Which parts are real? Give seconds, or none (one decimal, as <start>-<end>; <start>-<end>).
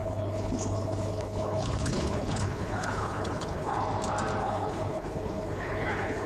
3.8-4.4